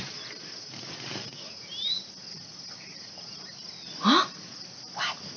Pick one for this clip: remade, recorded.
recorded